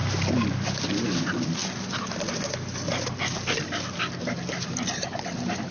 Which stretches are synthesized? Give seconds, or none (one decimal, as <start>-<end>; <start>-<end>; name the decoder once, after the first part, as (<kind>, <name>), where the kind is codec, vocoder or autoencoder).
0.0-1.6 (vocoder, BigVGAN v2); 4.3-5.7